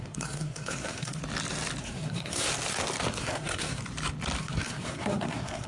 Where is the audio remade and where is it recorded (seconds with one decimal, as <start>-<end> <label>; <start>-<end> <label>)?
0.0-1.2 remade; 1.2-1.8 recorded; 1.8-2.5 remade; 2.5-3.2 recorded; 3.2-3.8 remade; 3.8-4.4 recorded; 4.4-5.7 remade